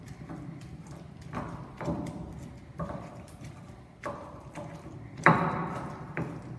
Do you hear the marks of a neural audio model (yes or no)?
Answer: yes